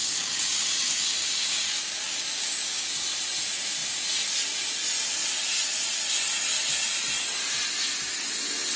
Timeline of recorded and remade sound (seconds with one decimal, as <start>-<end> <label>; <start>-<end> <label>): 0.0-2.9 remade; 2.9-8.8 recorded